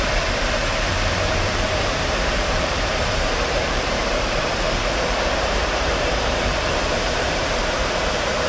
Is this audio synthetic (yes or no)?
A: yes